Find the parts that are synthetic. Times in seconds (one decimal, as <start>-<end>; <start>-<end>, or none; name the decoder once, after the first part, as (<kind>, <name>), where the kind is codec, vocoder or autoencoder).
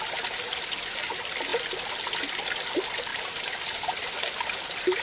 none